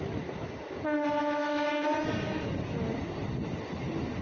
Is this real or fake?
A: real